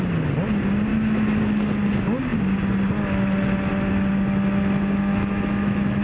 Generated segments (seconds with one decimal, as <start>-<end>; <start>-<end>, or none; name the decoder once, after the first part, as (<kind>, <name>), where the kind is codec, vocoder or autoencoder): 0.9-1.4 (autoencoder, DAC-VAE); 5.1-6.0